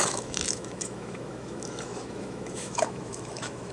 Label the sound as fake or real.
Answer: fake